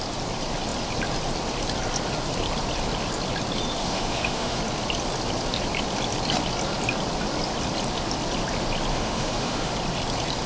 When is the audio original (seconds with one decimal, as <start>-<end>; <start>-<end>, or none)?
0.0-3.8; 4.6-8.9; 9.7-10.5